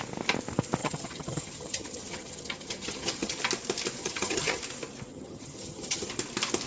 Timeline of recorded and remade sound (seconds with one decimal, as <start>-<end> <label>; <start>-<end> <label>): 0.0-0.8 recorded; 0.8-3.4 remade; 3.4-4.0 recorded; 4.0-4.6 remade; 4.6-5.1 recorded; 5.1-6.1 remade; 6.1-6.7 recorded